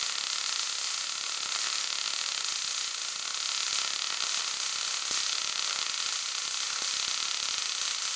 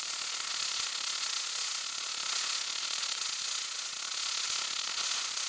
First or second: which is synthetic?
second